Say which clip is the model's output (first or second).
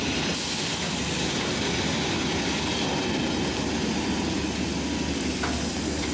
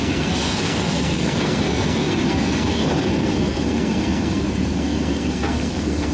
second